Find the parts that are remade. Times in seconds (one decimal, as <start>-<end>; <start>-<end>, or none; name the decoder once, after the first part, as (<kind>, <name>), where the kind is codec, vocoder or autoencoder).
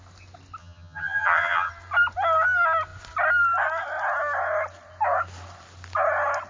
0.6-1.7 (vocoder, HiFi-GAN)